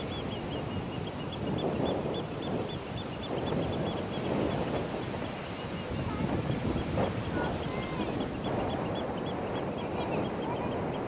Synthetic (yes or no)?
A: no